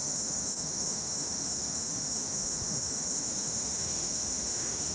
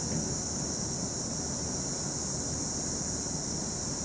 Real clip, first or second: second